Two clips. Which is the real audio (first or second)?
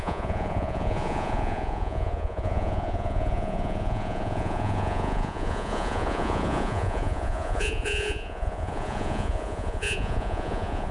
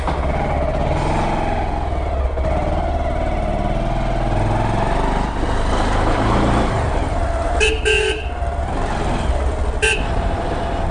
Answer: second